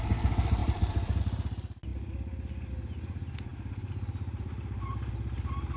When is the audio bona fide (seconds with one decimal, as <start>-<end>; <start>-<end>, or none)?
0.0-0.6; 1.2-3.5; 5.1-5.8